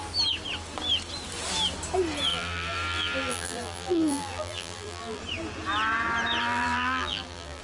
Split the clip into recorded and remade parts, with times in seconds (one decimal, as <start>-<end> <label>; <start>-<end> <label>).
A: 0.0-2.3 recorded; 2.3-5.2 remade; 5.2-6.4 recorded; 6.4-7.6 remade